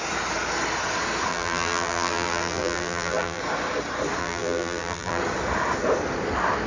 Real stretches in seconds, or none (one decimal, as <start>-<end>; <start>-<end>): 0.0-1.3; 3.4-4.2; 5.2-6.7